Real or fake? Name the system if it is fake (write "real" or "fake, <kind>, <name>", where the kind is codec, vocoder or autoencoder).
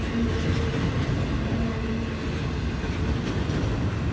real